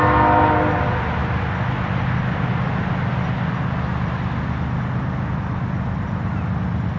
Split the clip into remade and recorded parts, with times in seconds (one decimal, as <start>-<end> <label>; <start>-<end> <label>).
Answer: 0.0-7.0 recorded